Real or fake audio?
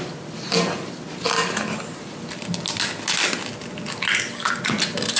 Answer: real